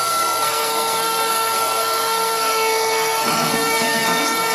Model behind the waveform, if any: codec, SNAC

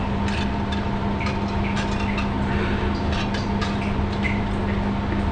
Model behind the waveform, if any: none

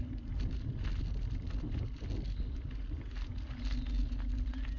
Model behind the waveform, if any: none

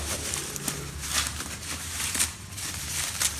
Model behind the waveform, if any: vocoder, BigVGAN v2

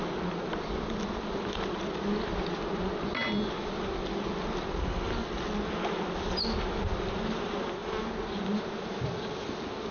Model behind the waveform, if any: none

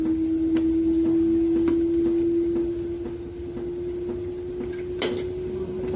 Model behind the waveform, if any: none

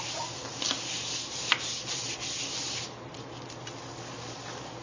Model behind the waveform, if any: none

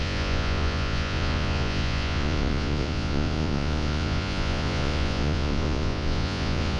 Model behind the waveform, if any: vocoder, Vocos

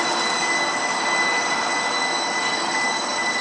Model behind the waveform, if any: none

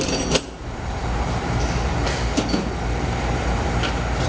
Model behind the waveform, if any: none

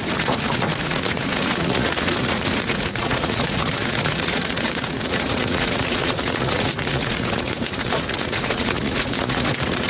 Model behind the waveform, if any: vocoder, Vocos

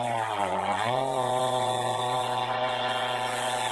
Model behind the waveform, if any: vocoder, Vocos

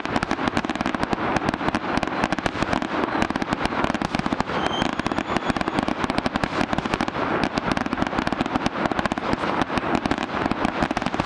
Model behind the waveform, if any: none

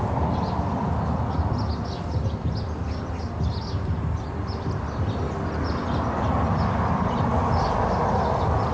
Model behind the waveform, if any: none